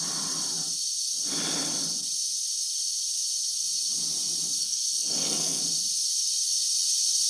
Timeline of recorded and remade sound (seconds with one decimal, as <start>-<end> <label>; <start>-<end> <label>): 0.0-4.6 recorded; 4.6-5.6 remade; 5.6-7.3 recorded